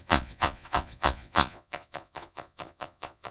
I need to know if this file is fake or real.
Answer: fake